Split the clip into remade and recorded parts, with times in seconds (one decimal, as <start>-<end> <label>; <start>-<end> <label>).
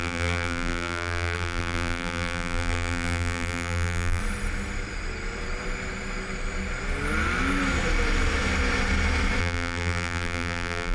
0.0-4.2 remade; 4.2-9.4 recorded; 9.4-10.9 remade